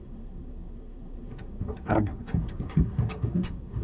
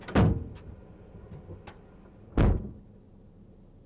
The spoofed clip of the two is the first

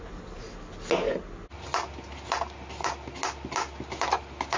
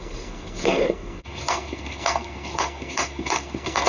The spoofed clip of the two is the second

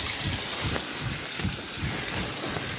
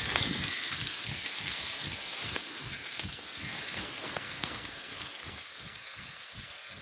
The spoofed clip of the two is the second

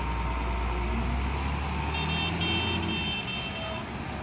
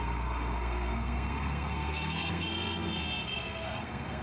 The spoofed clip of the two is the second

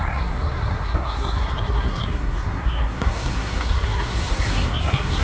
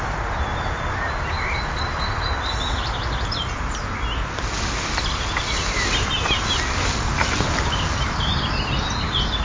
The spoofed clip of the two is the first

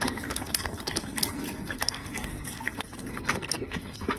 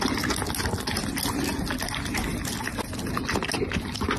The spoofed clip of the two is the first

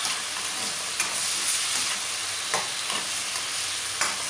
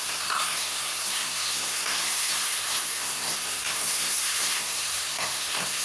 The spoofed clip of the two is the second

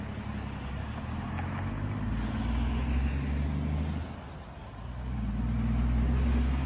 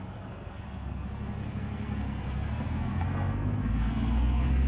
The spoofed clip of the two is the second